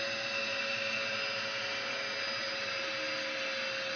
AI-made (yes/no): no